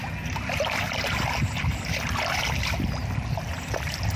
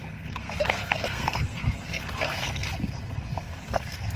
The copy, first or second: second